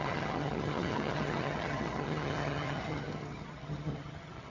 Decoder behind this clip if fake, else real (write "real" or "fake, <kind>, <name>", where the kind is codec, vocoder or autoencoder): fake, vocoder, HiFi-GAN